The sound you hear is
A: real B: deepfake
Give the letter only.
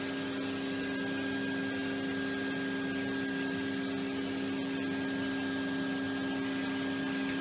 A